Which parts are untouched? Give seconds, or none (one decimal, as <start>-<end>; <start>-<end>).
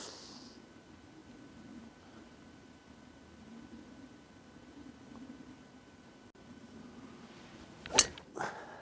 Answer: 0.0-8.8